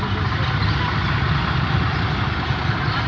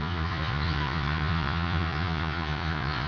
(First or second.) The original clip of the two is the first